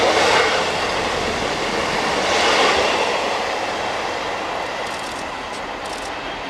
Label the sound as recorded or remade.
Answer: recorded